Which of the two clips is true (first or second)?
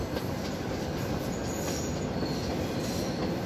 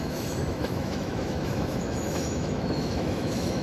first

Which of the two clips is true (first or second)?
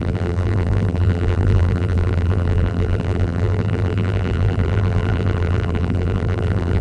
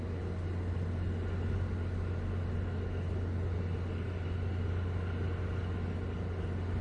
second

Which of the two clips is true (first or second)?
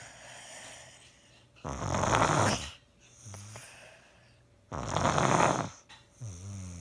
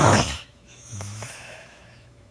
first